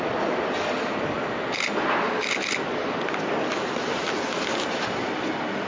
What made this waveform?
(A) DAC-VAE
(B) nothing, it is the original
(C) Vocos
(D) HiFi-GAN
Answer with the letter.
B